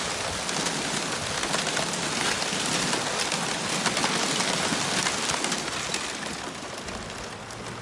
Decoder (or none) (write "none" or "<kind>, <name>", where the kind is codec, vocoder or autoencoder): none